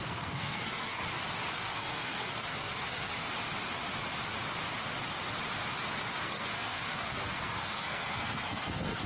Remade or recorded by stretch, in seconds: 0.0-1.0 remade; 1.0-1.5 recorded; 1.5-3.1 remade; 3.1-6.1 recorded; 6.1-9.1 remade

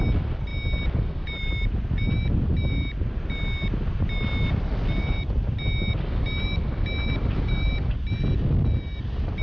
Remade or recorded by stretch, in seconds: 0.0-9.4 recorded

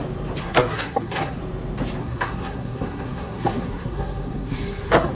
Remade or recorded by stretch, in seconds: 0.0-0.4 recorded; 0.4-1.4 remade; 1.4-2.0 recorded; 2.0-5.1 remade

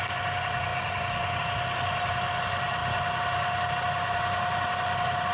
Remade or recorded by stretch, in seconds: 0.0-5.3 recorded

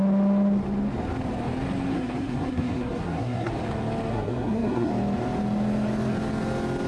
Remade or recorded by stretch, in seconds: 0.0-1.9 recorded; 1.9-3.5 remade; 3.5-4.1 recorded; 4.1-4.9 remade; 4.9-6.9 recorded

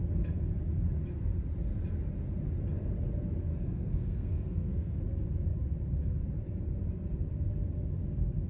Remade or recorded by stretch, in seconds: 0.0-3.5 recorded; 3.5-5.0 remade; 5.0-8.5 recorded